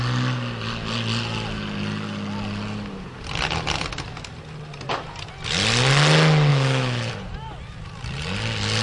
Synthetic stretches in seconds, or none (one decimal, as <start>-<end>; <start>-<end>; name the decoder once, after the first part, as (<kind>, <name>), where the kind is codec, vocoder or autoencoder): 6.5-7.1 (autoencoder, DAC-VAE)